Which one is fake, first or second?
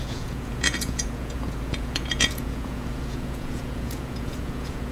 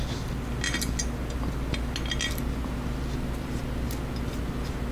first